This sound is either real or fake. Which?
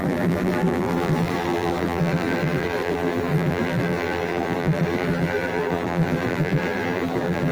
fake